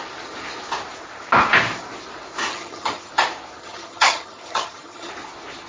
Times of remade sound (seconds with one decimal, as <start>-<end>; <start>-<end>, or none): 2.5-3.1; 3.6-5.1